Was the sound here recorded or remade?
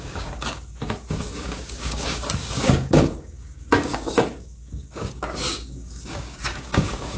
remade